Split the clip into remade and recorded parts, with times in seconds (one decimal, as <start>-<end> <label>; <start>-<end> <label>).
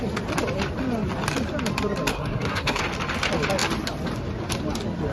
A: 0.0-2.1 recorded; 2.1-2.8 remade; 2.8-5.1 recorded